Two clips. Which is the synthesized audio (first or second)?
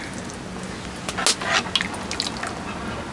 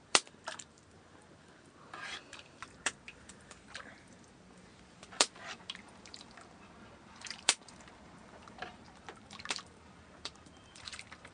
second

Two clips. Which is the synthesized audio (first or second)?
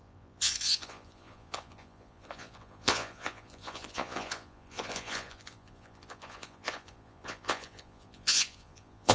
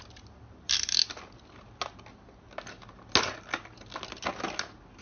first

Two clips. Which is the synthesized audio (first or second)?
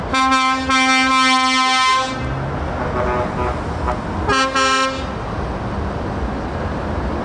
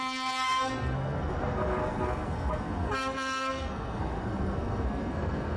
second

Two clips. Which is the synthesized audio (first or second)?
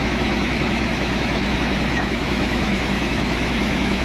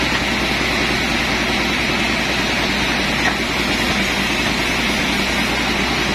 first